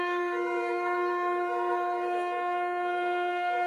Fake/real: fake